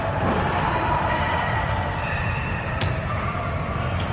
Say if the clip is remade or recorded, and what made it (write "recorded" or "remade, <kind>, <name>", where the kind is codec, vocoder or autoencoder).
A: recorded